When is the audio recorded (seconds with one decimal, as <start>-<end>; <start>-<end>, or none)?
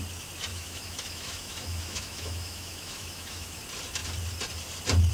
0.0-0.5; 3.6-5.1